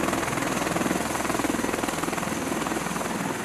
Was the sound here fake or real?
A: real